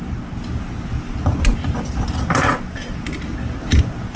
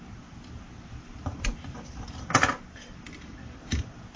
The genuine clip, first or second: first